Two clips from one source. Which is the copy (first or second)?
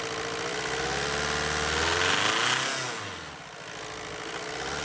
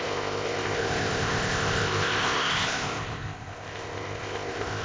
second